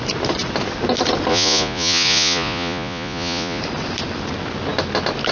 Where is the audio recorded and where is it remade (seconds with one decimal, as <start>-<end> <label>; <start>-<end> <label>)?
0.0-1.3 recorded; 1.3-3.6 remade; 3.6-5.3 recorded